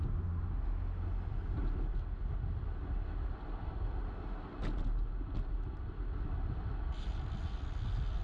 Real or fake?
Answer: real